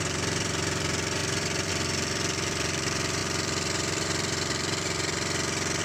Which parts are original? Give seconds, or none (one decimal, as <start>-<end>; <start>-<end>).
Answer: none